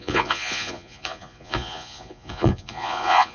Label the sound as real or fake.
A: fake